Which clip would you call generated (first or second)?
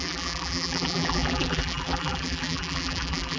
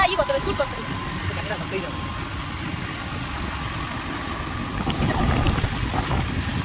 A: first